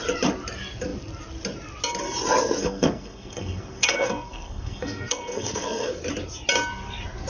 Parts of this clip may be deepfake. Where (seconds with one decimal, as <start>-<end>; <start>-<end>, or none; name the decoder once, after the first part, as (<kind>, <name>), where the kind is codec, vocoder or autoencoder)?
2.6-6.0 (codec, SNAC)